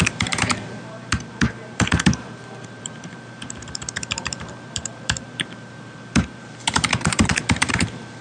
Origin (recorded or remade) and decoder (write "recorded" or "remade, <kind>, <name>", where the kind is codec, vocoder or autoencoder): remade, vocoder, BigVGAN v2